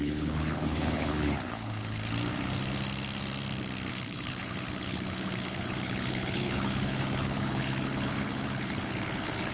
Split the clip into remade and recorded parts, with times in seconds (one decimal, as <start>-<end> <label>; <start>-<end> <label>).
0.0-2.0 remade; 2.0-3.9 recorded; 3.9-9.5 remade